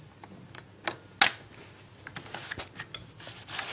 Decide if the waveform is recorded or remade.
recorded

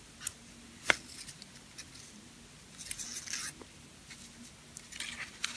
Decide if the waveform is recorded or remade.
recorded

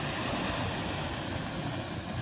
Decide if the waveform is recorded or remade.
recorded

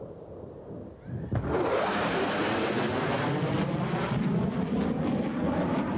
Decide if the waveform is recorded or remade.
recorded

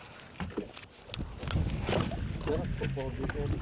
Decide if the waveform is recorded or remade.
recorded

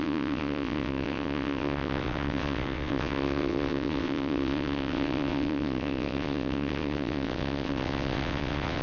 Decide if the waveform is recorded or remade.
remade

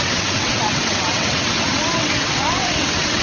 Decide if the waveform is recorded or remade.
remade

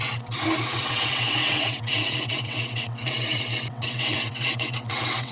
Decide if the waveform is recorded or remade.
remade